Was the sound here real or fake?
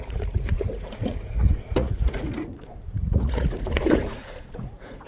fake